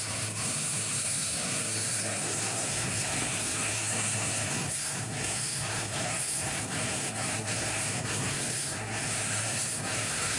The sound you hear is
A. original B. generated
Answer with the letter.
B